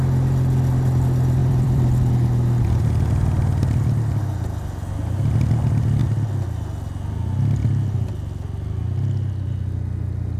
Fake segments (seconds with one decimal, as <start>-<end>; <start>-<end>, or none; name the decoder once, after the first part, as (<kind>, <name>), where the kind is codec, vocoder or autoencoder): 1.4-2.0 (vocoder, BigVGAN v2)